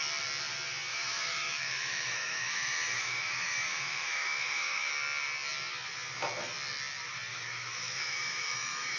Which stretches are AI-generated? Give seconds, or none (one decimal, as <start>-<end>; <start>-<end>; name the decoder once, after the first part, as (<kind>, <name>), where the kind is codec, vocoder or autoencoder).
0.9-4.9 (autoencoder, DAC-VAE); 7.3-9.0